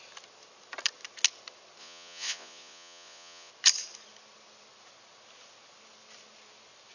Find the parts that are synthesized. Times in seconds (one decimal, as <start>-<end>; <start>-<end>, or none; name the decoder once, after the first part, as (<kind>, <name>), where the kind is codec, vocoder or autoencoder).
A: 1.8-3.5 (vocoder, Vocos)